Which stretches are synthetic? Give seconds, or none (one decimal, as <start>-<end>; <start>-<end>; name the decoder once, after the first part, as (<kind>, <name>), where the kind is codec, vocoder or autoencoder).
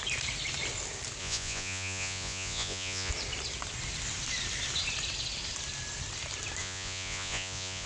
1.2-3.1 (vocoder, Vocos); 6.6-7.9